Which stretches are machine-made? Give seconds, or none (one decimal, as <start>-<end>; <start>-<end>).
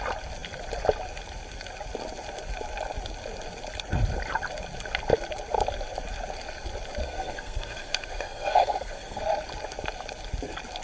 7.0-9.2